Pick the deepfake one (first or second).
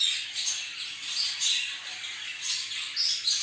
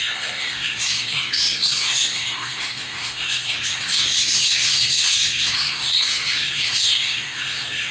second